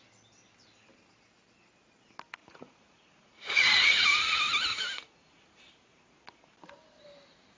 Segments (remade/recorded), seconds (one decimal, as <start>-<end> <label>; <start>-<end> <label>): 0.0-2.4 recorded; 2.4-5.6 remade; 5.6-7.6 recorded